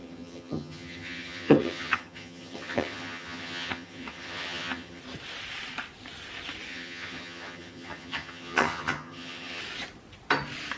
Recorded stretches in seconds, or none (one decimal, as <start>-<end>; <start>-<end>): 5.0-6.7; 9.6-10.8